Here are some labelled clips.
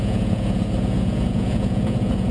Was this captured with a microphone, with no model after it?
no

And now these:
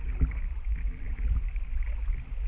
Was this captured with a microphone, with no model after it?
yes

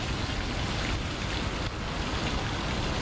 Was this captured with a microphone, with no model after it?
yes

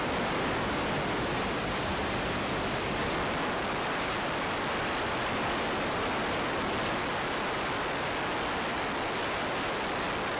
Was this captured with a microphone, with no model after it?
yes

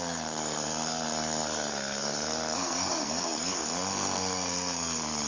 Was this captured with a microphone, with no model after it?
no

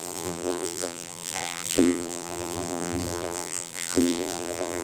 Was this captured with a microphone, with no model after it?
no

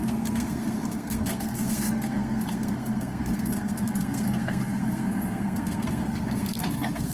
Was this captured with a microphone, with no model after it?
no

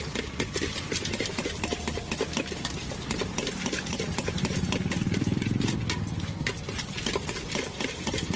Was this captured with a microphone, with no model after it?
yes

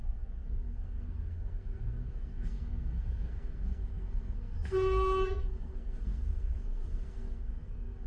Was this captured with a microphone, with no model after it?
no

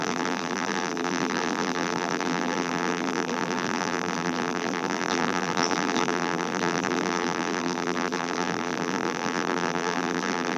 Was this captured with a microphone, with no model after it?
no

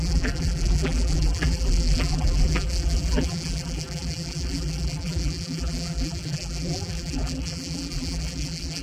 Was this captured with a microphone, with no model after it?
no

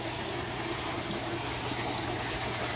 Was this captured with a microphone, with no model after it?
yes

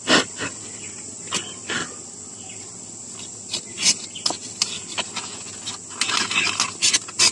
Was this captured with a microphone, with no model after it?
yes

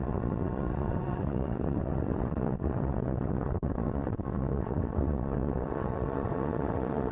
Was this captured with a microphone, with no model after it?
no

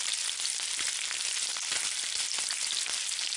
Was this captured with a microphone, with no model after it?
yes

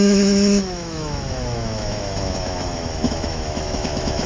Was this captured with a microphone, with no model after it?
no